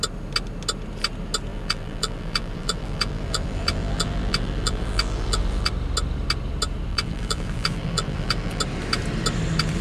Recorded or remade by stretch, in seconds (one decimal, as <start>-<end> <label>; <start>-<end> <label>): 0.0-1.5 recorded; 1.5-5.7 remade; 5.7-6.9 recorded; 6.9-8.6 remade; 8.6-9.8 recorded

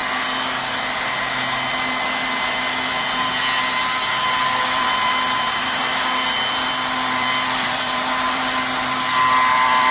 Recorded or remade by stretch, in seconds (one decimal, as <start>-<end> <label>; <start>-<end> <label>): 0.0-4.4 recorded; 4.4-5.8 remade; 5.8-6.7 recorded; 6.7-9.9 remade

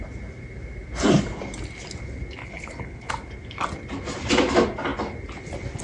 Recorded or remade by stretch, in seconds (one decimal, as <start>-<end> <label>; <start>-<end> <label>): 0.0-2.4 recorded; 2.4-3.1 remade; 3.1-5.8 recorded

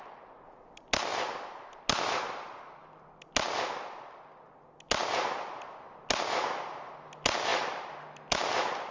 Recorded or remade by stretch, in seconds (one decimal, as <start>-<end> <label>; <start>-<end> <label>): 0.0-8.9 recorded

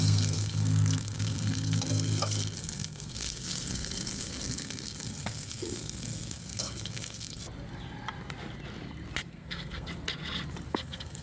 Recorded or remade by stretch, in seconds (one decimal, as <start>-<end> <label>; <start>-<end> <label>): 0.0-7.4 remade; 7.4-9.3 recorded; 9.3-9.9 remade; 9.9-10.7 recorded; 10.7-11.2 remade

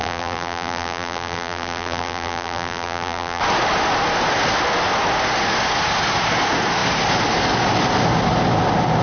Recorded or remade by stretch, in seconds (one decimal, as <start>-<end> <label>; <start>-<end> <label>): 0.0-3.4 remade; 3.4-9.0 recorded